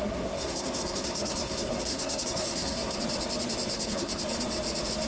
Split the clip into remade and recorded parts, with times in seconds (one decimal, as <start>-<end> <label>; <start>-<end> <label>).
0.0-3.0 remade; 3.0-3.7 recorded; 3.7-4.2 remade; 4.2-5.1 recorded